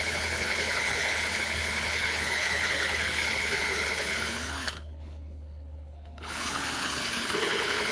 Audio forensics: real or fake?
fake